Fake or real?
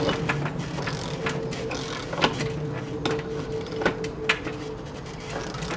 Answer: real